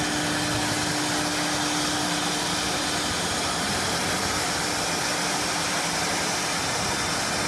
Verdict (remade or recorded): recorded